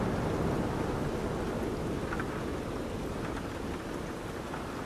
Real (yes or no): yes